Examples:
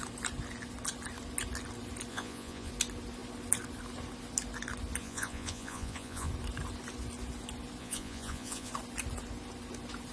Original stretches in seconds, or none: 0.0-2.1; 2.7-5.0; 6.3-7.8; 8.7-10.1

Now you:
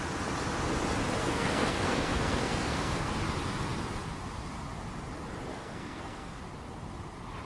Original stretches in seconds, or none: 0.0-1.2; 3.1-5.5; 6.4-7.5

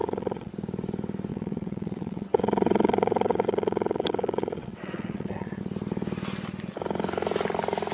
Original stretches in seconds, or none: 0.5-1.3; 5.6-7.9

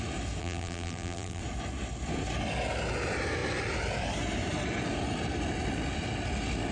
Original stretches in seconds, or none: 0.0-0.4; 1.4-6.7

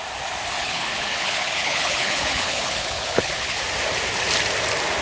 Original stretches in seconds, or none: 0.0-0.6; 3.6-5.0